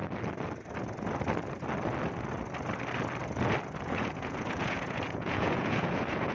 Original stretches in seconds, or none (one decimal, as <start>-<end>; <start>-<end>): 0.0-3.8